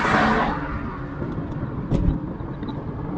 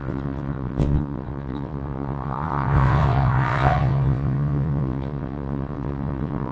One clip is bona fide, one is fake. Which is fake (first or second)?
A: second